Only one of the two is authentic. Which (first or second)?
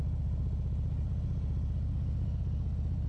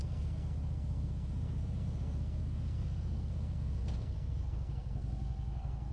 first